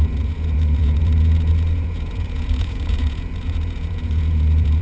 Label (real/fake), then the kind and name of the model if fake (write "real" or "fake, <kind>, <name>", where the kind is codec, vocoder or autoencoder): fake, vocoder, Vocos